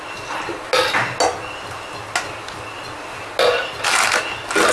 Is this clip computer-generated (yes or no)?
no